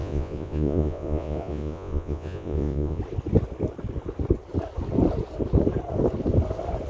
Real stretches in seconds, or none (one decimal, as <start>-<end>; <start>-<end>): 3.0-6.9